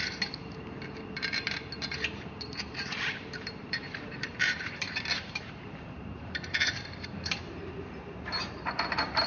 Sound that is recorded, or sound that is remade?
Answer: remade